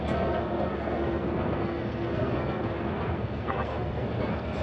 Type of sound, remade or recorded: remade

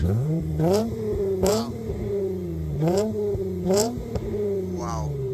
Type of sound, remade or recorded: remade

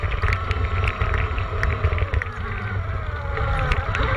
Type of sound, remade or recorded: recorded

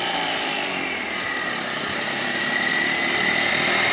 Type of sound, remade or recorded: recorded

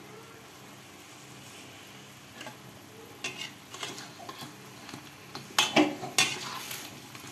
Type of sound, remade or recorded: recorded